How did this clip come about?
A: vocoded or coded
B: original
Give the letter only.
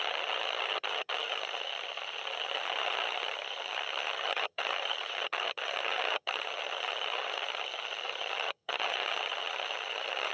A